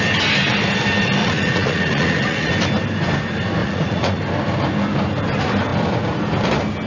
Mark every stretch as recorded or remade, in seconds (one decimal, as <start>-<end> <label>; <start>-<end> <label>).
0.0-1.2 recorded; 1.2-2.5 remade; 2.5-3.6 recorded; 3.6-4.2 remade; 4.2-6.9 recorded